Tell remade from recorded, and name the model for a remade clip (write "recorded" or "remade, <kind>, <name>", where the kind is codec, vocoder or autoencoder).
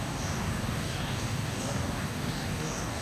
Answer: remade, codec, DAC